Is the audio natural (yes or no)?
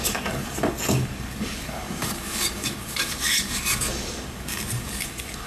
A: no